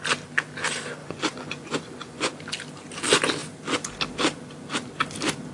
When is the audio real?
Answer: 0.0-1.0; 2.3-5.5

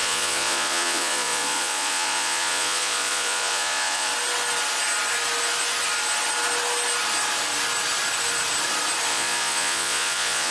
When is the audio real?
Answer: 4.1-9.1

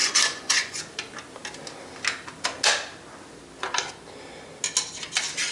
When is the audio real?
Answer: 0.8-5.5

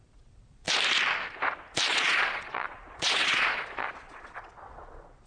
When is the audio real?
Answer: 0.7-1.9